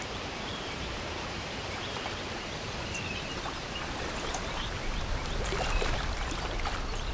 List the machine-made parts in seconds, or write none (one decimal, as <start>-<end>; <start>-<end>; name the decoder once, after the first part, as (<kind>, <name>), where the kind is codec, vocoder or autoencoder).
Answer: 0.0-4.3 (vocoder, BigVGAN v2)